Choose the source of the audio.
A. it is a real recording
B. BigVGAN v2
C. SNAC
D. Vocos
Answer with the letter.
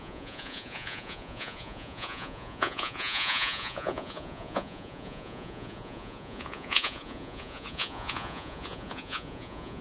D